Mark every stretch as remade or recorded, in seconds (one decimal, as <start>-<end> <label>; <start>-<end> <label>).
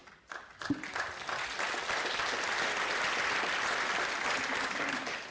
0.0-5.3 recorded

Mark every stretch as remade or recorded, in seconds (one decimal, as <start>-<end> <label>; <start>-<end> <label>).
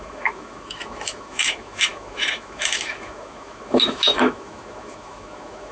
0.0-5.7 remade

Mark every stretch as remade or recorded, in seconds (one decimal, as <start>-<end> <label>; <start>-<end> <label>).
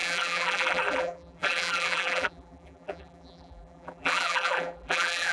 0.0-5.3 remade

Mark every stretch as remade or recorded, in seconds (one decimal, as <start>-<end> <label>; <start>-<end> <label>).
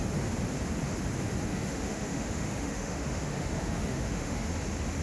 0.0-1.5 recorded; 1.5-4.5 remade; 4.5-5.0 recorded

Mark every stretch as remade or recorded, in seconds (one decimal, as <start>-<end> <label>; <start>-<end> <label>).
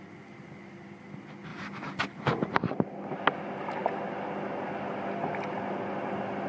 0.0-1.5 recorded; 1.5-2.8 remade; 2.8-6.5 recorded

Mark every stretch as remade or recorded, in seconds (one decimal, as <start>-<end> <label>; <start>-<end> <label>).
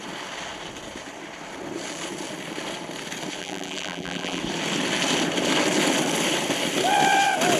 0.0-3.4 recorded; 3.4-4.4 remade; 4.4-7.6 recorded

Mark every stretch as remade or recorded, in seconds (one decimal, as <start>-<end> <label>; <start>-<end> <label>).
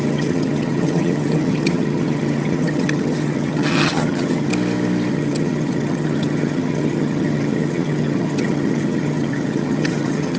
0.0-4.5 remade; 4.5-5.1 recorded; 5.1-10.4 remade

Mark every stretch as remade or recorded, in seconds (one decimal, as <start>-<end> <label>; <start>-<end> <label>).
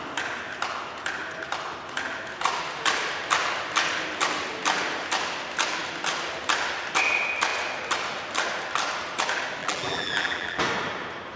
0.0-9.6 recorded; 9.6-10.6 remade; 10.6-11.4 recorded